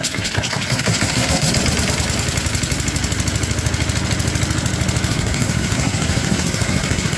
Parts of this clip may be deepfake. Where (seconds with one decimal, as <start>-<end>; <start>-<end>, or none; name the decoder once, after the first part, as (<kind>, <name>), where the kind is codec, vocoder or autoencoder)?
0.0-1.5 (codec, SNAC); 5.1-7.2